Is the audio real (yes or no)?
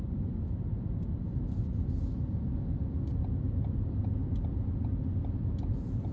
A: yes